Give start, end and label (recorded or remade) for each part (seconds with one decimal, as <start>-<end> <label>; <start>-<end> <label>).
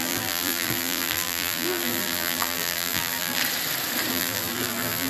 0.0-3.4 remade; 3.4-4.1 recorded; 4.1-5.1 remade